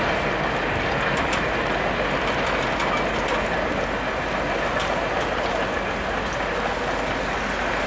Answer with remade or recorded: recorded